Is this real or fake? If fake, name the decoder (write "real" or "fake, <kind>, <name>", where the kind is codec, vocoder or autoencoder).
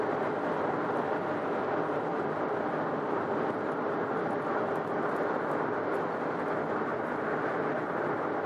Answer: real